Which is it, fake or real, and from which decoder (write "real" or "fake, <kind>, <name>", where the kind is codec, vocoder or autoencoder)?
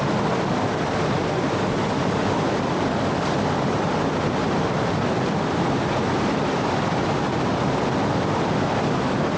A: real